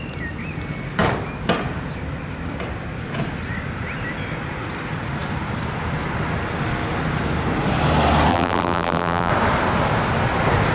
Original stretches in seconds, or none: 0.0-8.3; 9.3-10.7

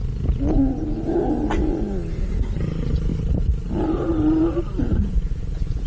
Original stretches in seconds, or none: 0.0-5.9

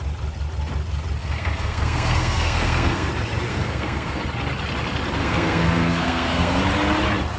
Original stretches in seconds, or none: 0.0-1.2; 3.1-3.5; 4.2-5.2; 6.6-7.4

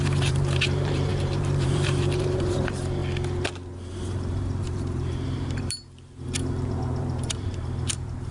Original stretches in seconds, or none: 3.0-3.9

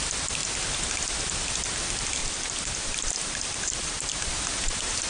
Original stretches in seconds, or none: 0.0-2.2; 4.3-5.1